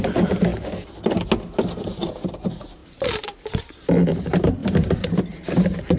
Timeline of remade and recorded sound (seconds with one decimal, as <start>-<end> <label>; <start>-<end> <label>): 0.0-0.5 remade; 0.5-2.0 recorded; 2.0-6.0 remade